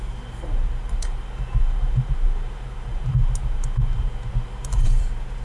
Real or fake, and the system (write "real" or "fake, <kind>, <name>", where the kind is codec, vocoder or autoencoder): fake, vocoder, BigVGAN v2